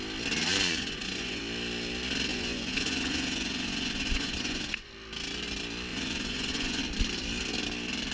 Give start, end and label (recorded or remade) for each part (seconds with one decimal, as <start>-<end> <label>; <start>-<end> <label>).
0.0-0.5 recorded; 0.5-1.4 remade; 1.4-2.3 recorded; 2.3-4.9 remade; 4.9-5.9 recorded; 5.9-6.8 remade; 6.8-8.1 recorded